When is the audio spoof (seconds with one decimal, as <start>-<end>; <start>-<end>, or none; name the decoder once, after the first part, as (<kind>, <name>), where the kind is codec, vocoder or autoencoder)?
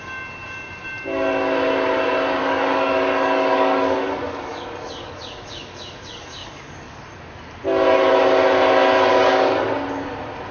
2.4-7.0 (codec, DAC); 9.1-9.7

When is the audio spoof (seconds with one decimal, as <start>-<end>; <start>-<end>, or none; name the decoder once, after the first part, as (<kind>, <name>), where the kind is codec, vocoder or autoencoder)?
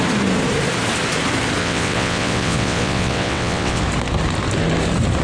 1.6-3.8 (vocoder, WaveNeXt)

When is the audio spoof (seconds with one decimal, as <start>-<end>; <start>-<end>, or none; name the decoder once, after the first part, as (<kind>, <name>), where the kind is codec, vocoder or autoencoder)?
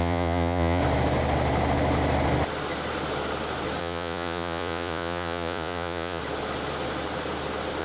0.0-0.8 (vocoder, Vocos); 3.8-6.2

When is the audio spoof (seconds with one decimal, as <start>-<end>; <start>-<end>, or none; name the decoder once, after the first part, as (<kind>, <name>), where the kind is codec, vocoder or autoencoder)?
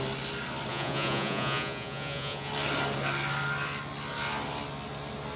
0.7-2.5 (vocoder, Vocos)